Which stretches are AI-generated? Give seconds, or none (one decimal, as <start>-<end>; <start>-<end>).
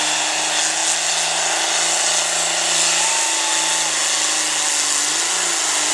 none